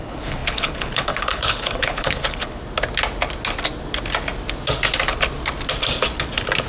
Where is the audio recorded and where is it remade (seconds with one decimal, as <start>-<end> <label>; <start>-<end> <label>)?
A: 0.0-2.6 remade; 2.6-6.7 recorded